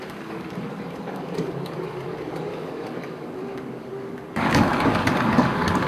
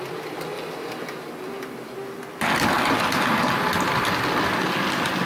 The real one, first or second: second